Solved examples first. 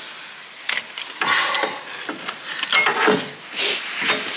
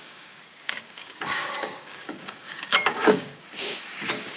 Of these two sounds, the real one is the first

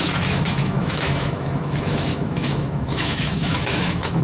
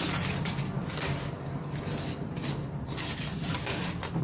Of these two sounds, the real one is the second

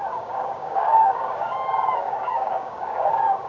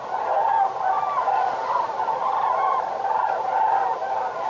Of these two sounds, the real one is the second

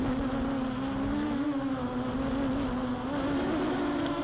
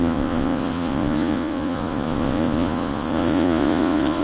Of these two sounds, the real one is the first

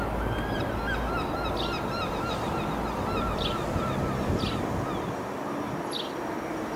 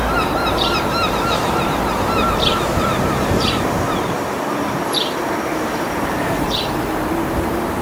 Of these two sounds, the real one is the first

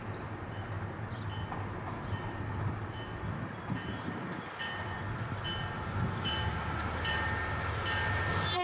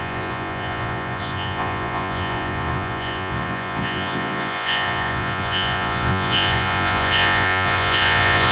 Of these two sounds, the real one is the first